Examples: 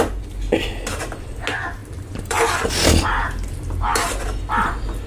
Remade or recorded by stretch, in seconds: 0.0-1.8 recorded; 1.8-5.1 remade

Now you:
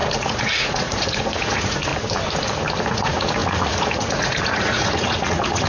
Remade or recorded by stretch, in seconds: 0.0-1.9 remade; 1.9-2.8 recorded; 2.8-5.7 remade